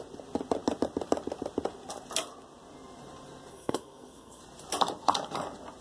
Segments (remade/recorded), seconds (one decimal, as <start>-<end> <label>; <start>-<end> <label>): 0.0-3.5 recorded; 3.5-4.4 remade; 4.4-5.8 recorded